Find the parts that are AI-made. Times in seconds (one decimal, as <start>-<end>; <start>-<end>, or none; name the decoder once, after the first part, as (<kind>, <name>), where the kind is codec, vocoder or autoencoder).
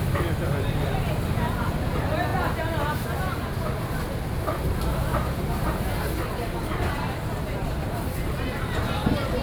none